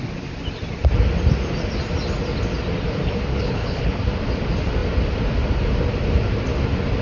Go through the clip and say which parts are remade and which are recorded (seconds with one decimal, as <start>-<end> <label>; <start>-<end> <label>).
0.0-3.3 recorded; 3.3-4.0 remade; 4.0-7.0 recorded